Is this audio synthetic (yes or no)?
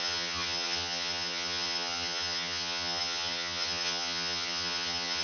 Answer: yes